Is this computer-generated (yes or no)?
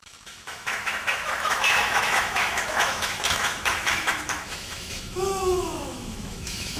yes